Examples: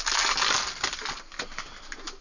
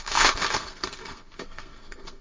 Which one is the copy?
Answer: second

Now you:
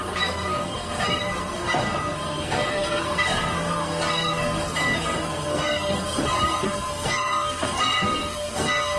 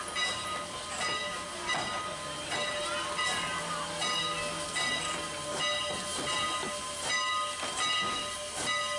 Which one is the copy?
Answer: first